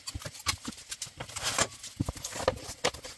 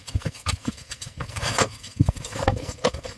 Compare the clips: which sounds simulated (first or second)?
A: second